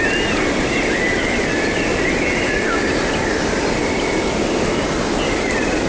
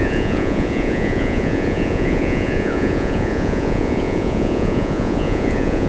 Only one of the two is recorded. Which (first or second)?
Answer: first